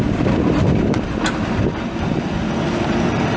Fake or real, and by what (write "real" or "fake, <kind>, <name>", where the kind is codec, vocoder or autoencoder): real